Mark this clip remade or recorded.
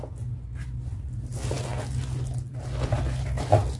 recorded